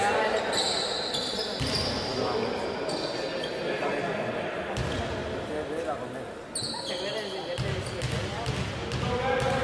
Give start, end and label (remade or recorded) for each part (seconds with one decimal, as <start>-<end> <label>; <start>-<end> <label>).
0.0-9.6 recorded